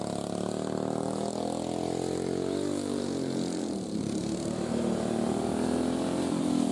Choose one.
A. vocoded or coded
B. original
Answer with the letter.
B